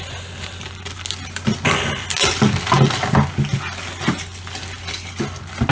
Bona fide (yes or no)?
yes